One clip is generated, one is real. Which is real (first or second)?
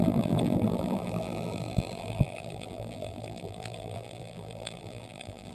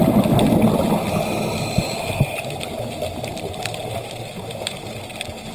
second